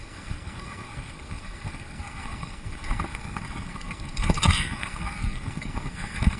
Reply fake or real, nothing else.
fake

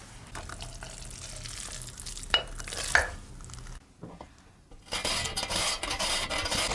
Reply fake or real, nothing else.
real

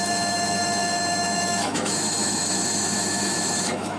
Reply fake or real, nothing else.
fake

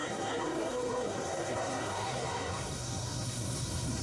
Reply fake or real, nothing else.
fake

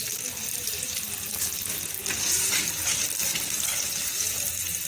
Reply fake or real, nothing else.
real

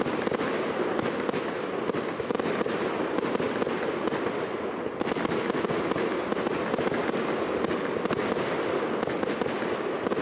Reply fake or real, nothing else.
real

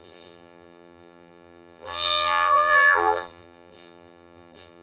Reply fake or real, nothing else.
fake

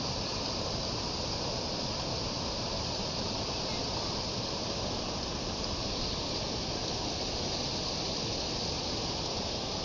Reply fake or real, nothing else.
real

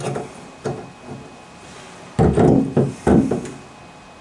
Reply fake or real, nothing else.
real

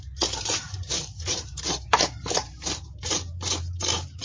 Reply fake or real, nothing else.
fake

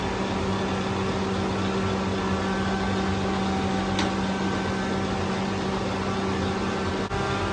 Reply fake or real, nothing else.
real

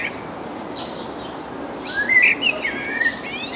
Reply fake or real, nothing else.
real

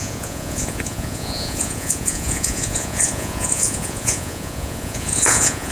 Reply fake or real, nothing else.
fake